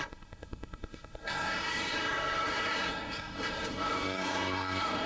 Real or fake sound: fake